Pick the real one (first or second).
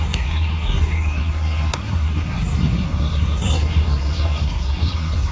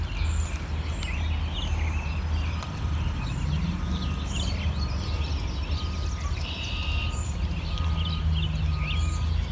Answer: second